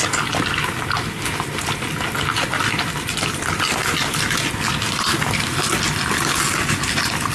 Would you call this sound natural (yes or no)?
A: yes